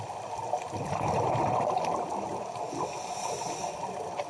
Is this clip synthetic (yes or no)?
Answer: no